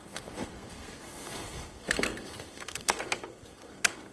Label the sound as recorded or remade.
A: remade